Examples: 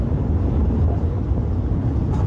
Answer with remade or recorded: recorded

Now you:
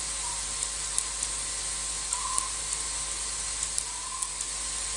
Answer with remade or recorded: recorded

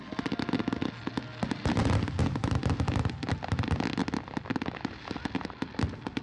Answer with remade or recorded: recorded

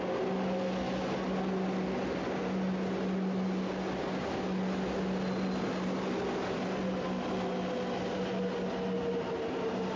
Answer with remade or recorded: recorded